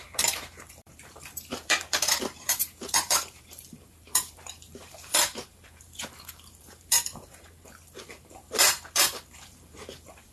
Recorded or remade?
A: remade